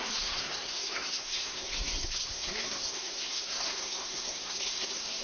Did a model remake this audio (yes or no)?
yes